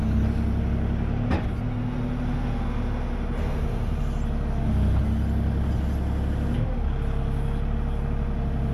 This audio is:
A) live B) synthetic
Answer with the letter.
A